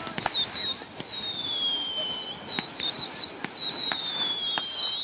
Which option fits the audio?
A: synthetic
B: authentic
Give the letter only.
B